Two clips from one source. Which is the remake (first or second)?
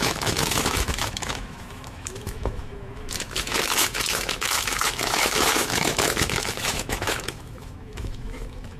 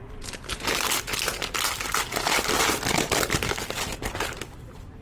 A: first